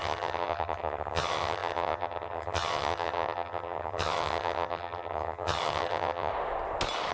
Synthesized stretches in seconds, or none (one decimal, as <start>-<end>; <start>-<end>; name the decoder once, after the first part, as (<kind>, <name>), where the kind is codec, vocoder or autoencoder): 0.0-6.3 (vocoder, HiFi-GAN)

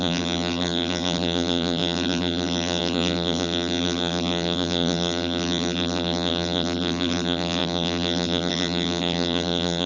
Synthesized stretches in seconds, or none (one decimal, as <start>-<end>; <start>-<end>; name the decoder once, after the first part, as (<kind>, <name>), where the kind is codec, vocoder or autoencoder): 0.0-9.9 (vocoder, BigVGAN v2)

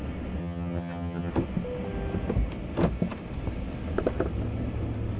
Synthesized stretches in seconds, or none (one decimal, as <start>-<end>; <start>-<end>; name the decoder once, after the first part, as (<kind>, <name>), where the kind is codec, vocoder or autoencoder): 0.4-1.3 (vocoder, HiFi-GAN)

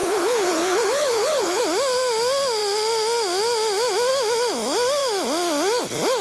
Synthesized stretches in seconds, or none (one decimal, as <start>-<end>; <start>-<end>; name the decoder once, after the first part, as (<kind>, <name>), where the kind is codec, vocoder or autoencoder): 0.0-1.6 (codec, HILCodec)